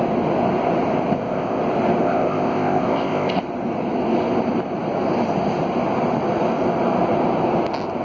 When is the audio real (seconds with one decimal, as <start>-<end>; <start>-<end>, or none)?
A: 0.0-1.1; 1.6-2.0; 3.4-8.0

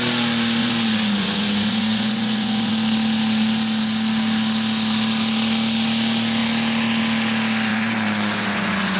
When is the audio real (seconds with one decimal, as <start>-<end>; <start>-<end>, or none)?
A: 0.0-0.6; 2.7-7.7

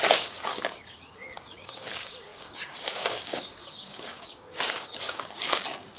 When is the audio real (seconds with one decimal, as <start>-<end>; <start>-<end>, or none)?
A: none

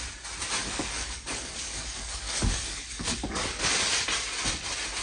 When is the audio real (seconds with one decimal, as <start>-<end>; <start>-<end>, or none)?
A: 0.0-0.6; 3.6-5.0

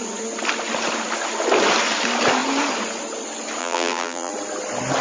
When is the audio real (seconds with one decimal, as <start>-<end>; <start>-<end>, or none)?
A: 0.0-3.6; 4.3-5.0

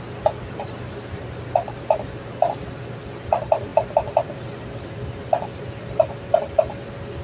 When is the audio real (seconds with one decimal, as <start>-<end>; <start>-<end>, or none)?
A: 0.0-7.2

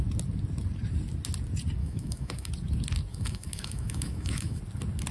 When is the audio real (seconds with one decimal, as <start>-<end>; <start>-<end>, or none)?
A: 0.0-1.8; 2.5-3.1; 4.6-5.1

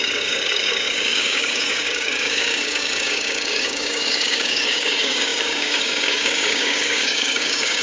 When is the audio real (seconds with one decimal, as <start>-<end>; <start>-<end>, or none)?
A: none